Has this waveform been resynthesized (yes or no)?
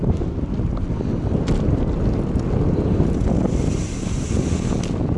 no